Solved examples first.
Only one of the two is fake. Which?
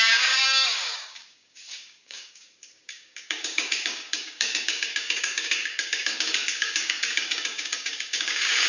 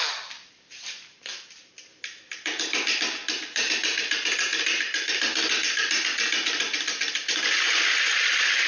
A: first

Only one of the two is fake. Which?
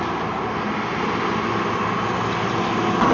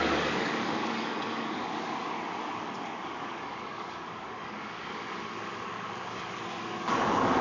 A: second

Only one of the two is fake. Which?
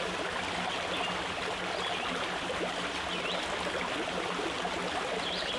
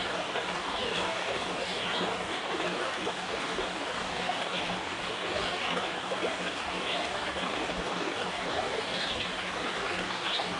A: second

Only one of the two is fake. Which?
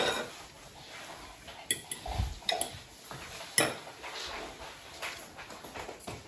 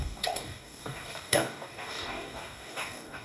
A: second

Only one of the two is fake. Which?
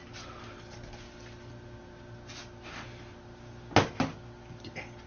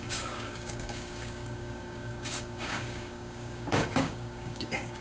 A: second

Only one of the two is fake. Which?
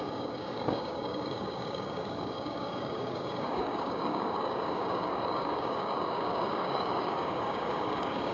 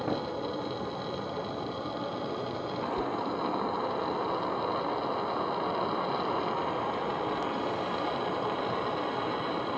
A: first